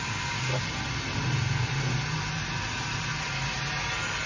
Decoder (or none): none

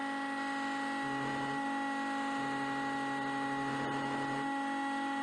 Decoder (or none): none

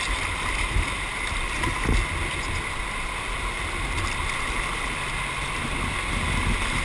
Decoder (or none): none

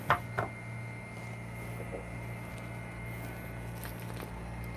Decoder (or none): none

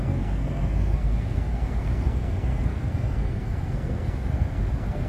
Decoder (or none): codec, SNAC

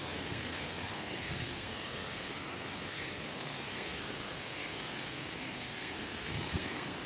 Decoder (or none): codec, SNAC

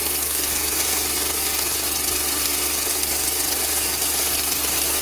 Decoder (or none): codec, SNAC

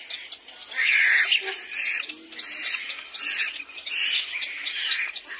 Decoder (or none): none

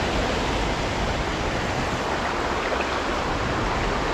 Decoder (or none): none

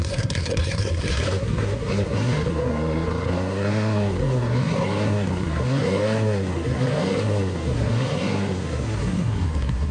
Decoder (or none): codec, SNAC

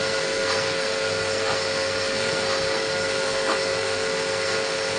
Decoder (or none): codec, SNAC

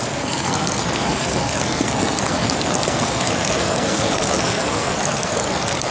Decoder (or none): codec, SNAC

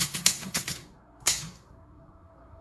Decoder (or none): codec, SNAC